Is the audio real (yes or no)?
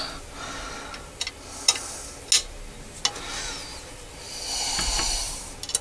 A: yes